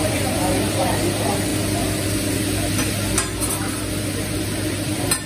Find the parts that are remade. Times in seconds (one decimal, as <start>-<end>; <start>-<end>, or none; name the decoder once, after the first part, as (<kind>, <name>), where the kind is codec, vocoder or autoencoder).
0.0-1.5 (vocoder, BigVGAN v2); 4.7-5.3